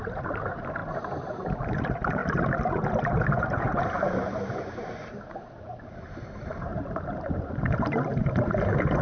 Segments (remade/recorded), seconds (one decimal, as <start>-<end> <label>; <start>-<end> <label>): 0.0-0.8 remade; 0.8-1.8 recorded; 1.8-2.2 remade; 2.2-2.9 recorded; 2.9-9.0 remade